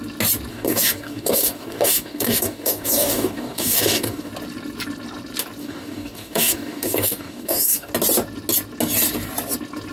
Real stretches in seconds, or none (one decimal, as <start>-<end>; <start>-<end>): 0.0-0.5; 4.3-5.6; 7.9-9.9